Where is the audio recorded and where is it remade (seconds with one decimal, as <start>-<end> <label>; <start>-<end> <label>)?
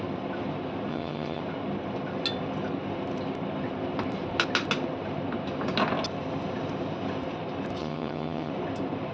0.0-0.9 recorded; 0.9-1.4 remade; 1.4-7.8 recorded; 7.8-8.5 remade; 8.5-9.1 recorded